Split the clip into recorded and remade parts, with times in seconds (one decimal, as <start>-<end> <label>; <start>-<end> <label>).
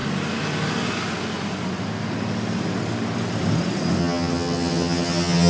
0.0-4.0 recorded; 4.0-5.5 remade